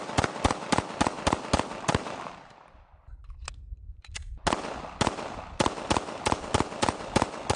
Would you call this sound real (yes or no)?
yes